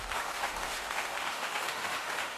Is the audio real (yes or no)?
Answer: no